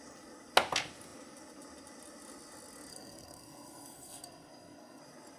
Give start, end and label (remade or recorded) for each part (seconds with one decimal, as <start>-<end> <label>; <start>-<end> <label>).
0.0-2.9 recorded; 2.9-5.0 remade; 5.0-5.4 recorded